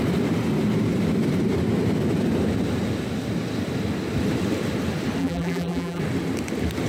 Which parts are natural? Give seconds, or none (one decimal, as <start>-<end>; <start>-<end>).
0.0-5.2; 6.0-6.9